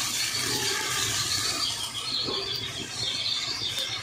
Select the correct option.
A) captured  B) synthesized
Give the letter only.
B